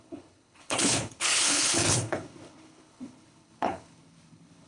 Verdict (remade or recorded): remade